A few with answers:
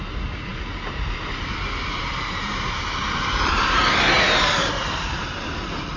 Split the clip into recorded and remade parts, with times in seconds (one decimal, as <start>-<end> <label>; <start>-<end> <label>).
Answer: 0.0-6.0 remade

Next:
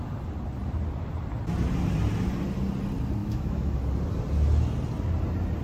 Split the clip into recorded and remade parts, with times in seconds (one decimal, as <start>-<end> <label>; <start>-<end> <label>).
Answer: 0.0-3.2 recorded; 3.2-3.8 remade; 3.8-5.6 recorded

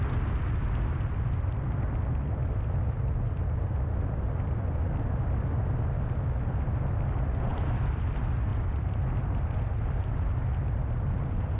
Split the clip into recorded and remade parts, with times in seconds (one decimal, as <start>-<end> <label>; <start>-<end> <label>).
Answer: 0.0-11.6 recorded

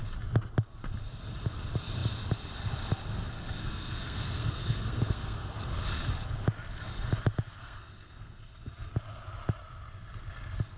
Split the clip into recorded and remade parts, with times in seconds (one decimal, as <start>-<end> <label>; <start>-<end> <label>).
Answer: 0.0-3.6 recorded; 3.6-5.5 remade; 5.5-7.6 recorded; 7.6-8.9 remade; 8.9-10.8 recorded

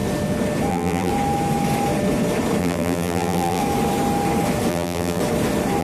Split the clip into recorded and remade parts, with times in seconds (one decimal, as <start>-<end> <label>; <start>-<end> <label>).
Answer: 0.0-0.7 recorded; 0.7-1.1 remade; 1.1-2.6 recorded; 2.6-3.6 remade; 3.6-4.7 recorded; 4.7-5.2 remade; 5.2-5.8 recorded

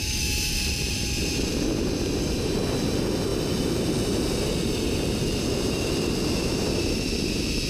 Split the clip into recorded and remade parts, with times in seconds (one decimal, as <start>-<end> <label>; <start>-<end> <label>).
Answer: 0.0-7.7 recorded